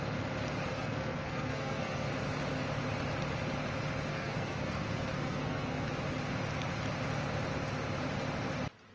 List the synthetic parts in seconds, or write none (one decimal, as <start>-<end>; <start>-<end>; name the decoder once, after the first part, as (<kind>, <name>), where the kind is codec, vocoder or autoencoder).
0.7-2.1 (codec, SNAC); 4.1-5.9